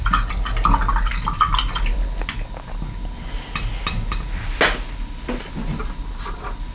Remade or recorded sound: recorded